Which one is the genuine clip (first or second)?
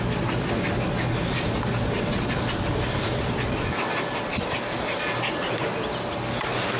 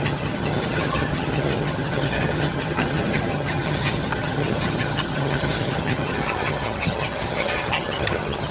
first